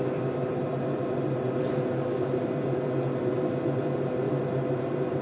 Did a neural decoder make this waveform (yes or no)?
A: no